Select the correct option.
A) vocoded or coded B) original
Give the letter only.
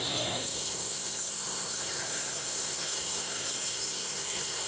A